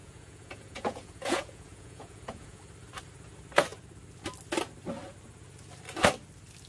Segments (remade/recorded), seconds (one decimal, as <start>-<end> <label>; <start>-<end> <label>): 0.0-2.6 remade; 2.6-6.7 recorded